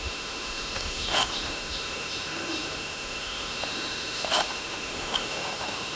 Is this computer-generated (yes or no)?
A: yes